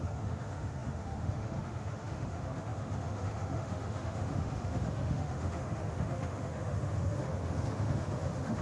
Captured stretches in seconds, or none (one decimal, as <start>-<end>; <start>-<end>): none